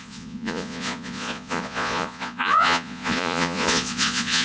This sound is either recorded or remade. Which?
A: remade